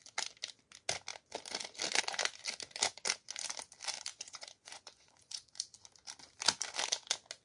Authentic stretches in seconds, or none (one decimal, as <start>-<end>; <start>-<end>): 0.0-4.1; 5.5-7.4